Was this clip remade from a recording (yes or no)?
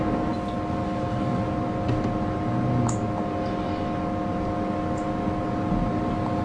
no